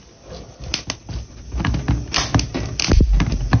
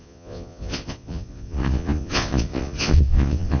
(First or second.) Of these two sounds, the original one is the first